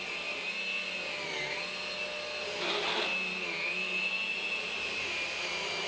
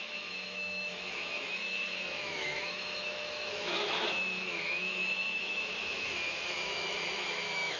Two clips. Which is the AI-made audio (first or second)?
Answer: second